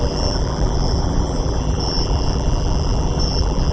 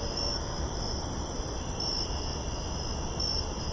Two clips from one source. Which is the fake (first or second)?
first